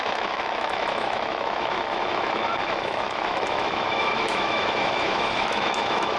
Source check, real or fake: fake